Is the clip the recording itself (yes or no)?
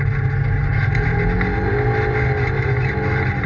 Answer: yes